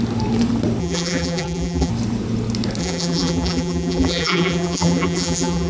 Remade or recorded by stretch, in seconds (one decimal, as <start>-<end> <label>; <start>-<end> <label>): 0.0-0.8 recorded; 0.8-1.9 remade; 1.9-2.8 recorded; 2.8-5.7 remade